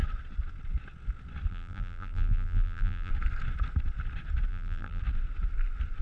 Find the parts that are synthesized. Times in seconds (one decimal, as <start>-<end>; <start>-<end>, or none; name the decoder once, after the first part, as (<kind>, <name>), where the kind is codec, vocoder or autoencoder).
1.5-3.1 (vocoder, BigVGAN v2); 4.5-5.0